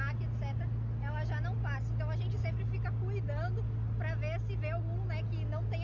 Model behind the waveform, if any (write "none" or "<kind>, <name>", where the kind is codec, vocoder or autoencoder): none